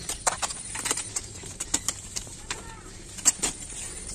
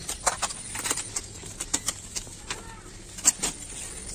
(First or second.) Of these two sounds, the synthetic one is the first